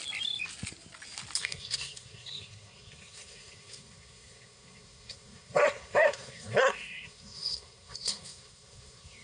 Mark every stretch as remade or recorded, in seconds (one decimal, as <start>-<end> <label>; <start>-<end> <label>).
0.0-1.4 recorded; 1.4-9.2 remade